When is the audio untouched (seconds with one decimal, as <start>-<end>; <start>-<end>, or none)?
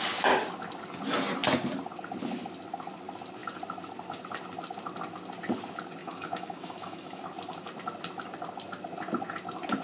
0.0-6.0; 7.2-9.8